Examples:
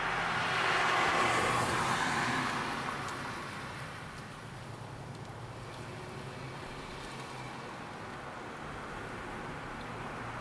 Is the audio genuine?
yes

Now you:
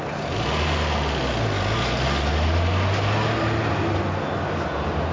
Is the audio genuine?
yes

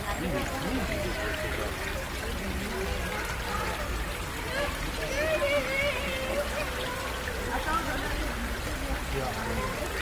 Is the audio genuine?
yes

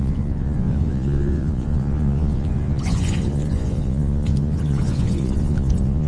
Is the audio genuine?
no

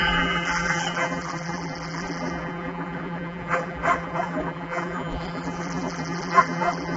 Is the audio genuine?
no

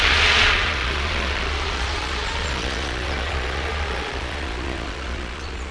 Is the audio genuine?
no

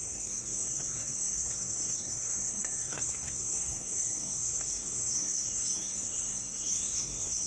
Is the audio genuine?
no